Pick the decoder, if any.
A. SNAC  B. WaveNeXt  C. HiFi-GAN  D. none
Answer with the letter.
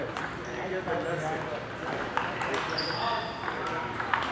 D